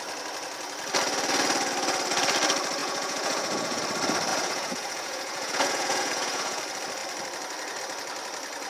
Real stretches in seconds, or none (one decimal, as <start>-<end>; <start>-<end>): 0.0-2.8; 3.8-4.3; 6.6-8.7

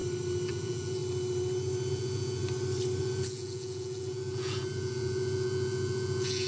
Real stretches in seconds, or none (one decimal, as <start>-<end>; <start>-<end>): 0.0-0.5; 1.0-1.9; 2.4-3.0